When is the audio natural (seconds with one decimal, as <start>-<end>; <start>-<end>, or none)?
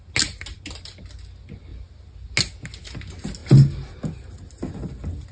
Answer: 0.0-5.3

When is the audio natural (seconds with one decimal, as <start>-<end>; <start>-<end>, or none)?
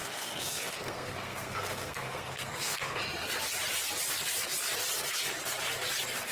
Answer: 3.0-6.3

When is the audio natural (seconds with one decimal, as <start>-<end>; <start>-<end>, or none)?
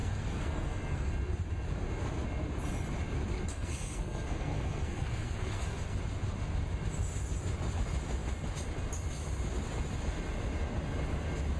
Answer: 1.1-3.5; 6.0-11.6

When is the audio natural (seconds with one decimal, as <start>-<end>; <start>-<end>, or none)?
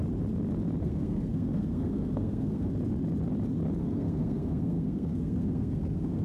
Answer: 0.0-0.8; 2.7-3.8